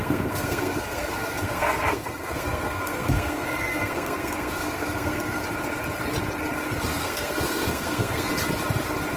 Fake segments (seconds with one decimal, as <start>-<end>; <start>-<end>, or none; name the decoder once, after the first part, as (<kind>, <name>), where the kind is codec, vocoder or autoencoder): 0.0-5.4 (codec, SNAC); 6.9-8.3